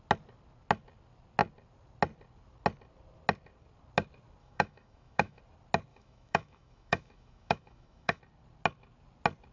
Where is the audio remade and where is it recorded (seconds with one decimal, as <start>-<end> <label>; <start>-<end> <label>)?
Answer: 0.0-4.4 recorded; 4.4-5.4 remade; 5.4-5.9 recorded; 5.9-8.2 remade; 8.2-9.5 recorded